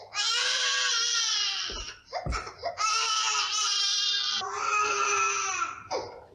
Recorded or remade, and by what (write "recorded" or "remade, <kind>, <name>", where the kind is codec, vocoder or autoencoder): remade, vocoder, BigVGAN v2